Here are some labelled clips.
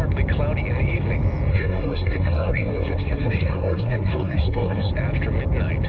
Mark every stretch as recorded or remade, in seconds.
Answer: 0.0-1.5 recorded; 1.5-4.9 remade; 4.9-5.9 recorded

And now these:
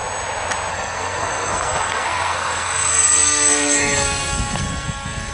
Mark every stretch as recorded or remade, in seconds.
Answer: 0.0-0.7 recorded; 0.7-5.3 remade

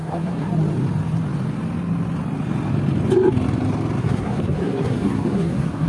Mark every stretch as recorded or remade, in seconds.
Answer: 0.0-0.5 remade; 0.5-4.0 recorded; 4.0-5.9 remade

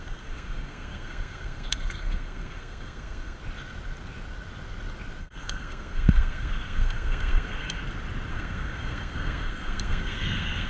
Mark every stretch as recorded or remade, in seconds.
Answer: 0.0-3.4 remade; 3.4-5.2 recorded; 5.2-7.8 remade; 7.8-8.3 recorded; 8.3-10.7 remade

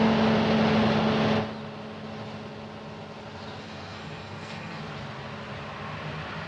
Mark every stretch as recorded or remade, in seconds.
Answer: 0.0-3.6 recorded; 3.6-4.8 remade; 4.8-6.5 recorded

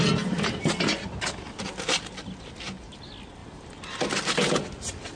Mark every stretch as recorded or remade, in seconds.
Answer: 0.0-5.2 recorded

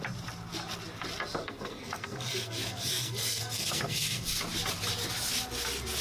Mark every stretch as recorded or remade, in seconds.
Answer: 0.0-1.4 recorded; 1.4-4.4 remade; 4.4-6.0 recorded

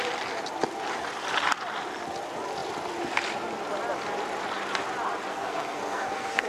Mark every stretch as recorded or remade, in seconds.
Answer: 0.0-5.3 recorded; 5.3-6.5 remade